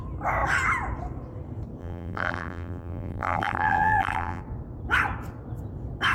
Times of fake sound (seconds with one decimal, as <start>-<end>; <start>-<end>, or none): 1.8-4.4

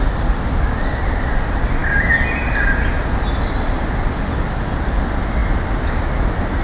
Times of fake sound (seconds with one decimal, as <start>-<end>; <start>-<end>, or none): none

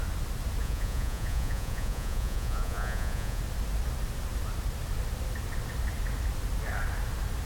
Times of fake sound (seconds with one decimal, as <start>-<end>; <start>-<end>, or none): 0.6-3.4